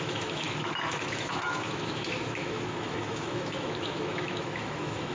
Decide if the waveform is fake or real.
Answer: fake